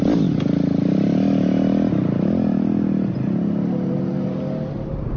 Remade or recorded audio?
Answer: recorded